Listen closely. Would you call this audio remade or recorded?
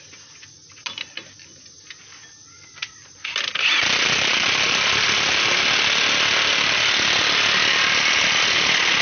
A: recorded